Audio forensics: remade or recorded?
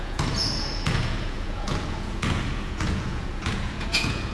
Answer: remade